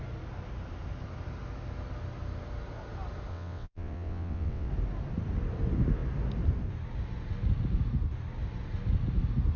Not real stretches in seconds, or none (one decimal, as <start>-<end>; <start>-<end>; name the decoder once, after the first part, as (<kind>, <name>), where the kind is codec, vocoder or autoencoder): 3.3-4.7 (vocoder, WaveNeXt)